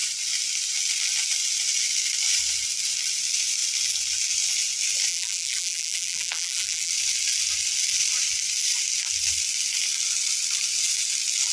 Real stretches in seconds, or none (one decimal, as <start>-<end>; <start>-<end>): 0.0-5.1; 6.9-11.5

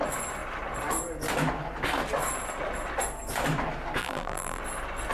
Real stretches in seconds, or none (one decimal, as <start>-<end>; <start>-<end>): 0.0-4.0; 4.6-5.1

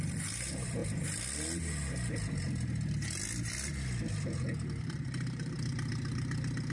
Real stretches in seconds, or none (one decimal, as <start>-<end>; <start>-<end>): 0.8-4.8

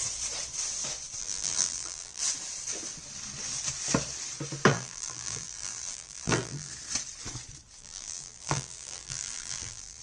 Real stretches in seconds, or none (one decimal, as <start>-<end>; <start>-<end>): 0.0-1.2; 2.2-4.7; 6.7-7.8

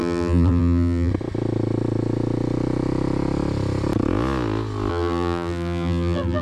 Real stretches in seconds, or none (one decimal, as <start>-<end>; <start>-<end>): 1.1-4.9

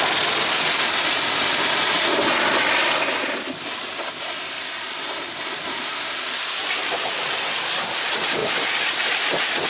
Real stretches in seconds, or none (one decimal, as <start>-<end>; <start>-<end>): 0.0-6.6; 7.2-8.4; 9.2-9.7

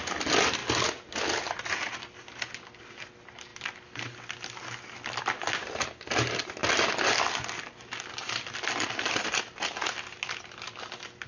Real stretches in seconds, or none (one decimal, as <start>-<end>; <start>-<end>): 0.0-3.5; 5.4-6.6; 8.3-11.3